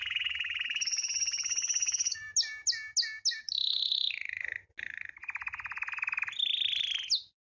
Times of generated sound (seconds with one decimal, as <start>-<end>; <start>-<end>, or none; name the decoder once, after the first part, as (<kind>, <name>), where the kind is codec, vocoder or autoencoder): 0.0-2.2 (codec, DAC)